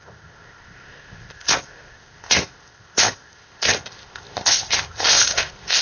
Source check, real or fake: fake